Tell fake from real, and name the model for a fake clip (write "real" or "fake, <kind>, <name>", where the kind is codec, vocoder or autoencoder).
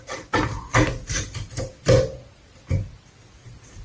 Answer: fake, vocoder, BigVGAN v2